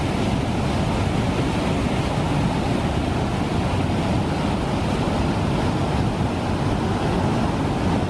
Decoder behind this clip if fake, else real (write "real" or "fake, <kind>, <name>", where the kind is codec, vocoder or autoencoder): real